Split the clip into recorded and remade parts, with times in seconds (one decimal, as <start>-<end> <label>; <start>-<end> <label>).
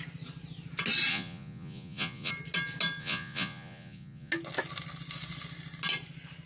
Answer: 0.0-1.1 recorded; 1.1-2.3 remade; 2.3-3.0 recorded; 3.0-4.3 remade; 4.3-6.5 recorded